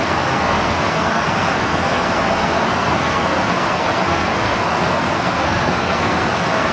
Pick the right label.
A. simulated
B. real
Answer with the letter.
A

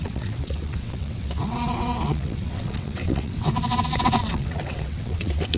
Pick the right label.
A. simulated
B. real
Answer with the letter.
A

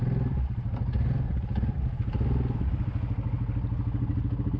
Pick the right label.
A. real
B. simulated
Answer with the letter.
A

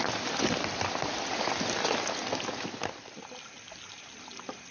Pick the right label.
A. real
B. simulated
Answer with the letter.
A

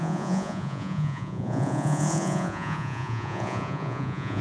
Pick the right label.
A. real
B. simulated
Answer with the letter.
B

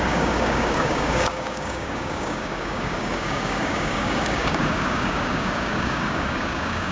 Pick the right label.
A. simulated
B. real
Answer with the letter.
A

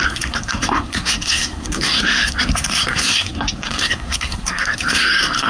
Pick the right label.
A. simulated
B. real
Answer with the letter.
A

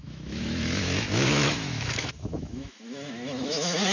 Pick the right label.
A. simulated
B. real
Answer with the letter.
A